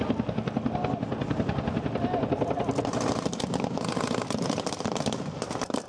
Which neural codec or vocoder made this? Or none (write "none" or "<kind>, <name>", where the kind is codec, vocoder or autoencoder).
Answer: none